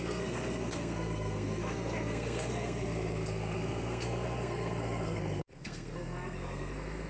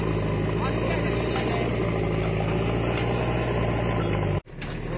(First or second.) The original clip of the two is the second